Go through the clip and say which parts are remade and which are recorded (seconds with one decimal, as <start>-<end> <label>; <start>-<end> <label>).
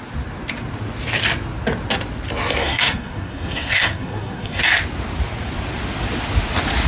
0.0-2.6 recorded; 2.6-4.6 remade; 4.6-6.9 recorded